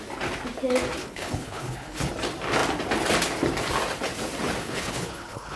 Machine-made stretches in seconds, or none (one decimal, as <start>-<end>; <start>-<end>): 1.0-2.1; 4.6-5.6